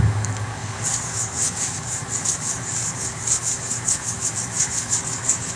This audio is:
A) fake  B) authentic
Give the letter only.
A